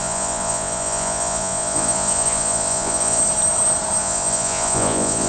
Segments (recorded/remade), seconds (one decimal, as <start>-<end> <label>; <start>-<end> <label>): 0.0-3.2 remade; 3.2-4.0 recorded; 4.0-5.3 remade